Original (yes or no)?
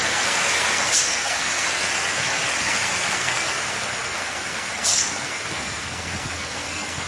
no